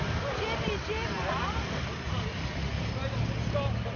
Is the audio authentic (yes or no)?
yes